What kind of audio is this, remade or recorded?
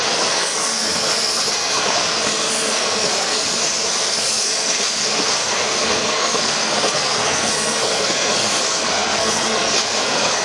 remade